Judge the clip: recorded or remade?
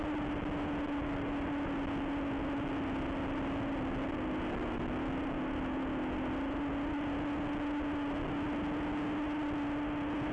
recorded